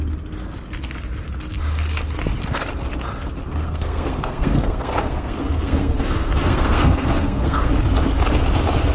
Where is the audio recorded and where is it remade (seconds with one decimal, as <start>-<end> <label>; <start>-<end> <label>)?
0.0-3.6 recorded; 3.6-7.7 remade; 7.7-8.9 recorded